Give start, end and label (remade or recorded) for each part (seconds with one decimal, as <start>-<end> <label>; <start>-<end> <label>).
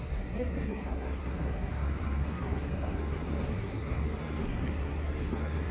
0.0-5.7 remade